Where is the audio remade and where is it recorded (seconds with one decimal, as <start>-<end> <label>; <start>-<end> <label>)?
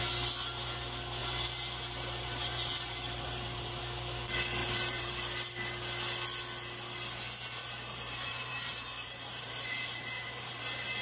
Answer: 0.0-1.2 recorded; 1.2-3.8 remade; 3.8-4.6 recorded; 4.6-5.1 remade; 5.1-7.6 recorded; 7.6-10.6 remade; 10.6-11.0 recorded